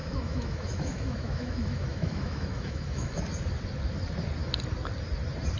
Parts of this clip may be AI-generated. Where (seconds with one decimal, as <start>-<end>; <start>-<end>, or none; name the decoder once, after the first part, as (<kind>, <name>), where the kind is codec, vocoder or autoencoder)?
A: 0.0-3.2 (autoencoder, DAC-VAE)